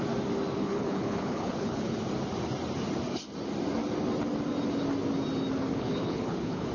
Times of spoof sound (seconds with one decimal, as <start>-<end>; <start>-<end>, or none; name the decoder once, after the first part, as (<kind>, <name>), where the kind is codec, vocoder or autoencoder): 0.6-2.0 (codec, HILCodec); 5.7-6.7